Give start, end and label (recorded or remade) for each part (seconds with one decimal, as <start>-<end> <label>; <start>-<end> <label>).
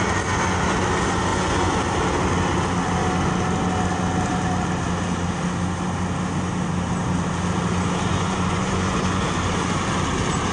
0.0-1.3 recorded; 1.3-1.8 remade; 1.8-8.1 recorded; 8.1-9.2 remade; 9.2-10.5 recorded